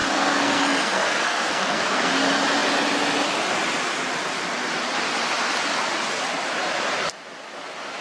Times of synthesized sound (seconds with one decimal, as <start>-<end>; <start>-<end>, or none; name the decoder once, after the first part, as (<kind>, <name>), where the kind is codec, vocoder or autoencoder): 0.0-2.1 (codec, SNAC)

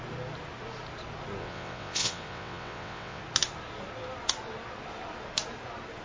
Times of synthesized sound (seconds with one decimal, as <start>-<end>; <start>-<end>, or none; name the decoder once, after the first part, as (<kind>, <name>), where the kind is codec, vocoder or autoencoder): 1.4-3.2 (vocoder, WaveNeXt)

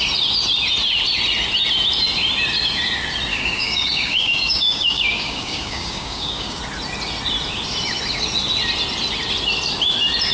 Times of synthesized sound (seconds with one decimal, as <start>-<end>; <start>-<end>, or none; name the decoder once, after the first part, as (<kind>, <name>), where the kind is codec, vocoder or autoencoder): 3.3-6.6 (codec, DAC)

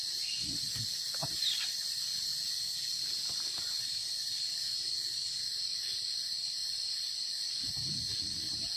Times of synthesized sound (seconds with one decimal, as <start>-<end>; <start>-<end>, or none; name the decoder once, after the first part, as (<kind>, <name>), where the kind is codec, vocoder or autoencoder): none